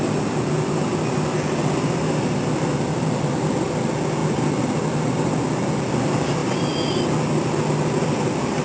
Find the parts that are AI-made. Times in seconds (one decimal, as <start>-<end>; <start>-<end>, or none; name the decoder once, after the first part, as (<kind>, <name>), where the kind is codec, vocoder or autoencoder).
none